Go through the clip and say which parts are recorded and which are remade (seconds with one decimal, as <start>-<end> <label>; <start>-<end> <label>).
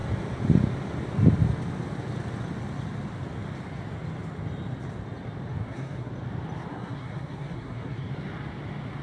0.0-5.5 recorded; 5.5-6.1 remade; 6.1-6.7 recorded; 6.7-8.1 remade; 8.1-9.0 recorded